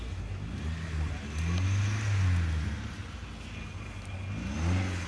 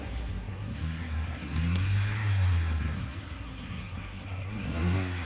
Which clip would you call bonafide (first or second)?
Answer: first